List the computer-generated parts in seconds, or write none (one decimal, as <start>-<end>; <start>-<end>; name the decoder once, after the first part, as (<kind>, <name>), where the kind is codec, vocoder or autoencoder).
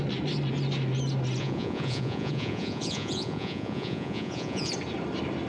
1.4-4.7 (vocoder, Vocos)